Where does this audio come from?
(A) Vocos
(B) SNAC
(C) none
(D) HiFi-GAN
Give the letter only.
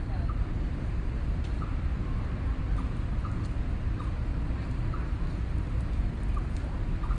C